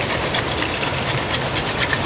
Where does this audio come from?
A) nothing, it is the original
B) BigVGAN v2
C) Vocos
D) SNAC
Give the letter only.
A